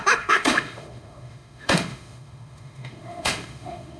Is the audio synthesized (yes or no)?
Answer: yes